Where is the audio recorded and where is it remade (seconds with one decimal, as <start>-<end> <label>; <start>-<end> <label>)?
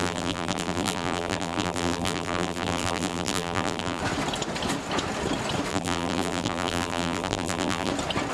0.0-4.0 remade; 4.0-5.7 recorded; 5.7-7.9 remade; 7.9-8.3 recorded